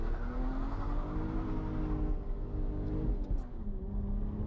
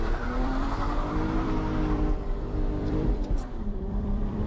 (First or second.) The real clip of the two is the first